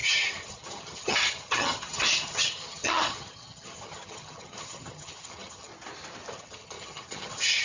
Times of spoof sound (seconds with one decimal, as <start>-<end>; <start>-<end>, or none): 0.0-5.7; 6.3-7.6